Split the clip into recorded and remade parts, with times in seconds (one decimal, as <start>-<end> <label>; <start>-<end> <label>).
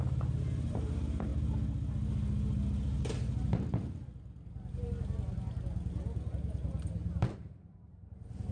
0.0-1.3 remade; 1.3-6.3 recorded; 6.3-8.5 remade